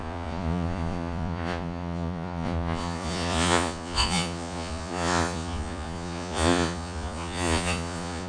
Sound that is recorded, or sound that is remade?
remade